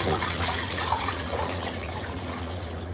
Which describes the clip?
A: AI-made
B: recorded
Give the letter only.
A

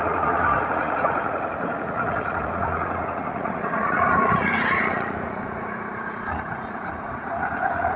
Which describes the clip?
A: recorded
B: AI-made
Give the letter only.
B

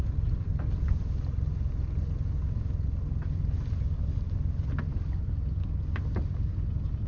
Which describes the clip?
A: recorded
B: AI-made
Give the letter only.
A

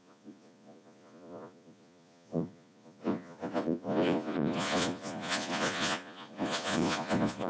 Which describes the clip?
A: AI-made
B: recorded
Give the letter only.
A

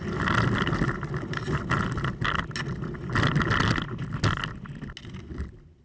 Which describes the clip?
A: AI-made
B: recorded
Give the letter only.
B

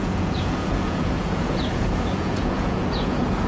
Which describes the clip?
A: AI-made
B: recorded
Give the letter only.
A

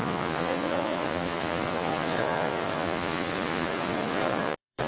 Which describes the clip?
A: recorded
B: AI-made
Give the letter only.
B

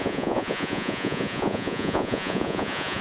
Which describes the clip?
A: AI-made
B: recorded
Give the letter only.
A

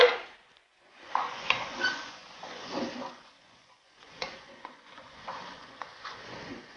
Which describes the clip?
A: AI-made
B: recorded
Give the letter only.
A